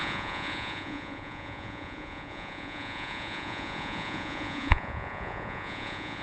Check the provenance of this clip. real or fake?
fake